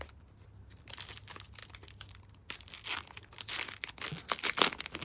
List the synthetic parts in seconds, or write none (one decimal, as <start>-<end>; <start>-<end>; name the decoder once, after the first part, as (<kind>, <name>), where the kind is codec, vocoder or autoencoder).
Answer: none

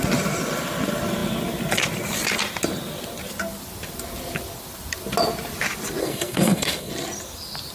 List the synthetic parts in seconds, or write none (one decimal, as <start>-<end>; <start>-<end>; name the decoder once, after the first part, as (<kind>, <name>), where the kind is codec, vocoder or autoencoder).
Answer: 6.0-6.9 (codec, SNAC)